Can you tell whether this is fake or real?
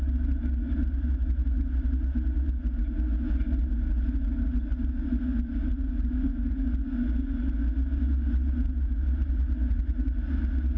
real